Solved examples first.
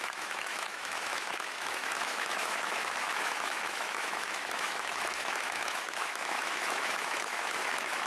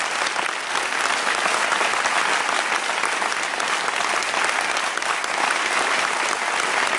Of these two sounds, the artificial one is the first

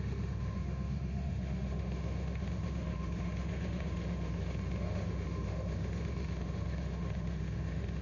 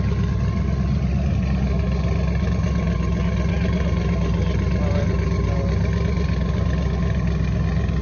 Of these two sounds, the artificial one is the first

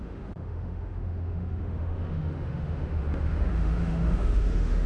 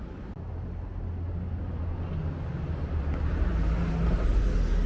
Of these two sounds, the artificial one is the first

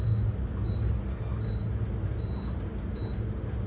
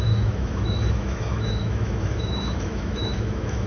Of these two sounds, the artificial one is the second